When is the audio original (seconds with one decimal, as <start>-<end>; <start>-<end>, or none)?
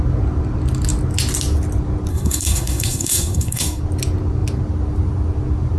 0.0-2.1; 3.8-5.8